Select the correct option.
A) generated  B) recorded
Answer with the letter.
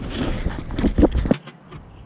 B